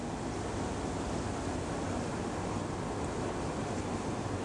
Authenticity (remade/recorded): recorded